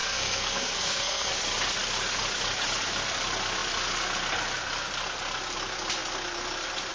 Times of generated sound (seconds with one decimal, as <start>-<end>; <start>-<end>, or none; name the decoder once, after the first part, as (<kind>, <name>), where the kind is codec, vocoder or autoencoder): 0.0-1.3 (codec, SNAC)